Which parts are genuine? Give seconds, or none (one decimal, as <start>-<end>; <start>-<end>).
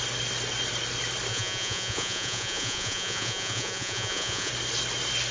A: 0.0-1.3; 4.5-5.3